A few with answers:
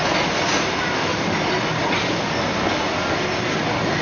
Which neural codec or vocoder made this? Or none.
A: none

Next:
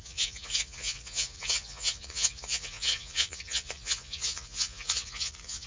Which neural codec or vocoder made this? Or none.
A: vocoder, Vocos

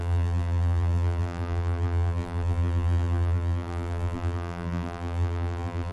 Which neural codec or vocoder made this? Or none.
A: vocoder, BigVGAN v2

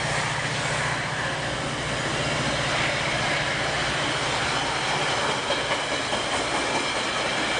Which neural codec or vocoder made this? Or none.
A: none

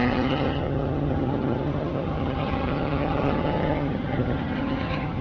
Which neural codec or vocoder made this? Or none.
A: vocoder, HiFi-GAN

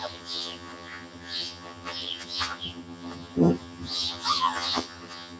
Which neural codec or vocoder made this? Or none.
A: vocoder, HiFi-GAN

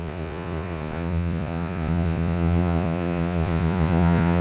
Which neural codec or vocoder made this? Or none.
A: vocoder, Vocos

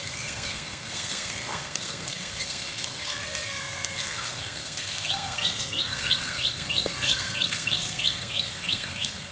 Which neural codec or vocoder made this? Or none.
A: codec, SNAC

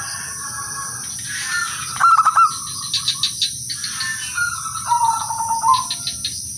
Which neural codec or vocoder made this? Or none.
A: none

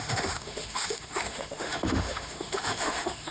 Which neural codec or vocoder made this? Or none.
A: autoencoder, DAC-VAE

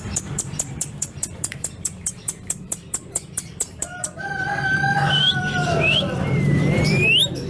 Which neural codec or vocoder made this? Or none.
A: vocoder, BigVGAN v2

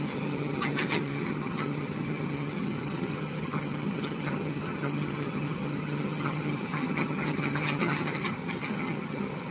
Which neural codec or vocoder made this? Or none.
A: vocoder, HiFi-GAN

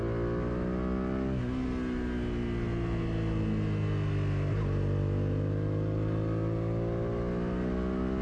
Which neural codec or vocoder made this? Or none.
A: none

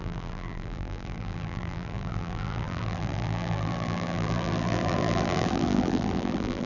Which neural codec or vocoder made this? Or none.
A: vocoder, BigVGAN v2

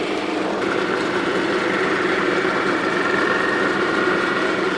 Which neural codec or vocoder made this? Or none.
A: vocoder, BigVGAN v2